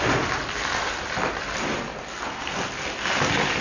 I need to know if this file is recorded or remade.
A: recorded